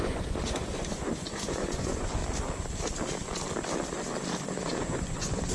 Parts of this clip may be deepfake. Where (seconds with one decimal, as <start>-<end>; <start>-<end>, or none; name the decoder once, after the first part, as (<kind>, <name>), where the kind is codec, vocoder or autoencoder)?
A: 0.0-2.2 (vocoder, Vocos); 4.4-5.5